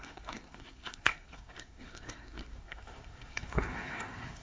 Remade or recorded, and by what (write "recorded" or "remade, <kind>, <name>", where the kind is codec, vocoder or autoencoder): remade, codec, SNAC